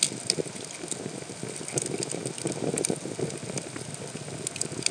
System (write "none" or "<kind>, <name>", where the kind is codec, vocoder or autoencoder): none